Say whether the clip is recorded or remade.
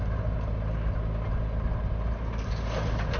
recorded